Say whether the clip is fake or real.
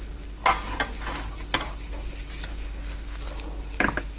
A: real